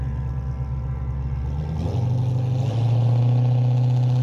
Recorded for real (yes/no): yes